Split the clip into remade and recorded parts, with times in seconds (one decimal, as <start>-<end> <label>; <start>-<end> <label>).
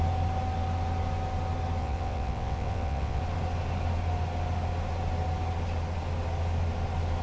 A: 0.0-1.8 recorded; 1.8-3.2 remade; 3.2-7.2 recorded